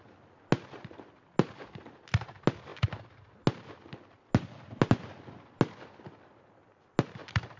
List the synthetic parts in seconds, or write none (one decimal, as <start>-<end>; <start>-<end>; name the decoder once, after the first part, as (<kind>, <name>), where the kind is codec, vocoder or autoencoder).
none